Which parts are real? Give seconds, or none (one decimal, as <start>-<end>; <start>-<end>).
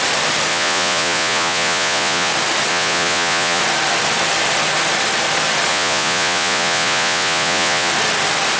0.0-0.5; 2.3-2.7; 3.6-5.7; 7.9-8.6